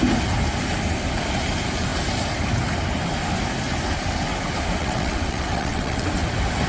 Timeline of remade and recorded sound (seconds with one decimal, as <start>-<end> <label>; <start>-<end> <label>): 0.0-4.8 recorded; 4.8-6.1 remade; 6.1-6.7 recorded